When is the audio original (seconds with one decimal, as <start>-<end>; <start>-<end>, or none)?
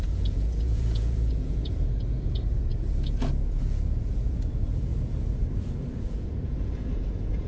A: 4.9-6.0